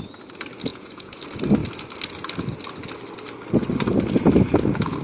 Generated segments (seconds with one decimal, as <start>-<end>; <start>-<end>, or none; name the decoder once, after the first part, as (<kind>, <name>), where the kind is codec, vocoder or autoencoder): 0.7-1.2 (vocoder, Vocos)